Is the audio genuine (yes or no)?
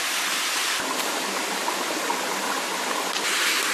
yes